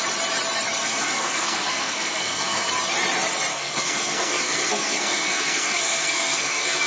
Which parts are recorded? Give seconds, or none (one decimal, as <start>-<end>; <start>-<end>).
0.0-0.8; 2.7-3.5